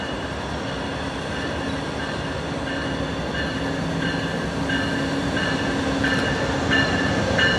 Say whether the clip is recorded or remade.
recorded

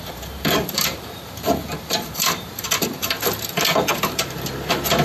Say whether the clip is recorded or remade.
remade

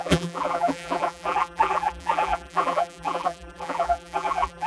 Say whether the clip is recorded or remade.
remade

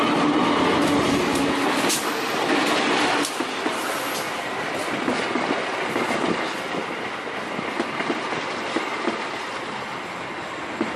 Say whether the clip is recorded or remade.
recorded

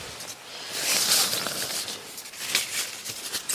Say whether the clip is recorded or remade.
recorded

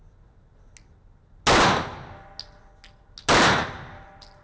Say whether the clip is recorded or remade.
recorded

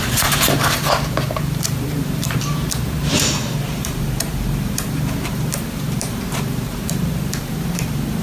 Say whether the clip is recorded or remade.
remade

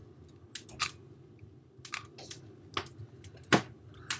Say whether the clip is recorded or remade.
recorded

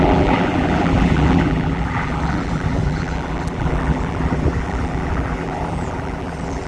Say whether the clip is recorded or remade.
remade